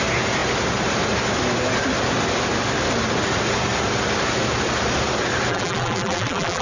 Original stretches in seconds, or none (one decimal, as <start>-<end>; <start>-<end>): 0.0-5.5